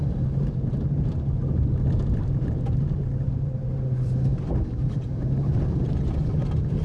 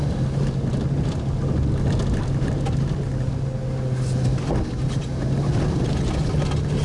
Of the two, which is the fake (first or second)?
first